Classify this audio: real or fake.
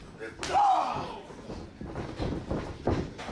real